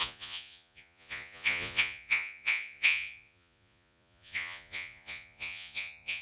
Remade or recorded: remade